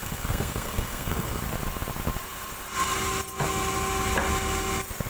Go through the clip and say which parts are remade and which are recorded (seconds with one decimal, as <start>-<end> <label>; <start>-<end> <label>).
0.0-1.4 remade; 1.4-5.1 recorded